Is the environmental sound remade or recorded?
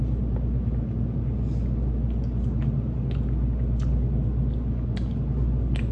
recorded